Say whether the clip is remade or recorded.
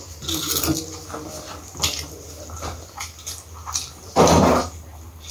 recorded